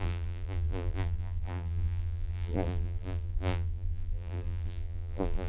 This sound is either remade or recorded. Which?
remade